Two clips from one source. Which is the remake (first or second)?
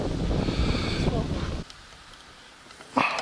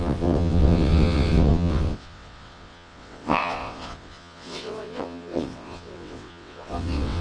second